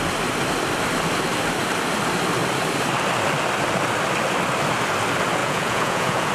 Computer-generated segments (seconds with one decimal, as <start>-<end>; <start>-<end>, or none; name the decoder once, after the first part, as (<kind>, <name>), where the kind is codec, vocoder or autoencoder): 5.4-6.3 (vocoder, Vocos)